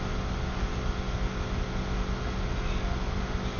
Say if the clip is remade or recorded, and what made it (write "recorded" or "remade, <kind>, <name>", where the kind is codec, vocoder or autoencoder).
recorded